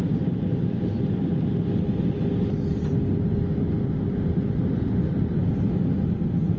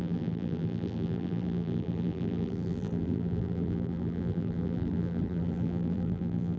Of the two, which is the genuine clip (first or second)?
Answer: first